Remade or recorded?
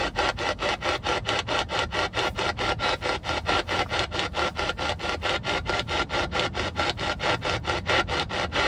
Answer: recorded